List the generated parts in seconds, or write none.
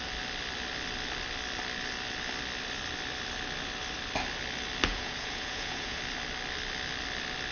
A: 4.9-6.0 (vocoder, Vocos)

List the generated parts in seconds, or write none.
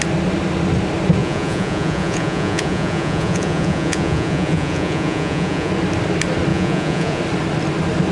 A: 1.2-5.7 (vocoder, Vocos); 6.5-7.2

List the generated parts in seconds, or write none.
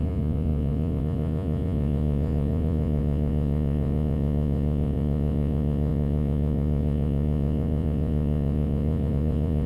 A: 0.0-9.7 (vocoder, Vocos)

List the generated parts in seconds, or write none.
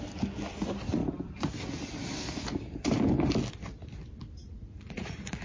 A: 4.4-5.4 (vocoder, Vocos)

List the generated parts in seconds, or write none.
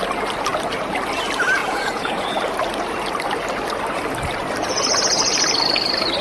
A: 1.6-2.3 (vocoder, Vocos)